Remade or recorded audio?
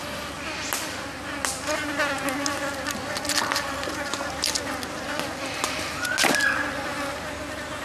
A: recorded